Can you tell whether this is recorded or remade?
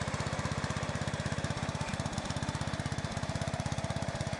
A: remade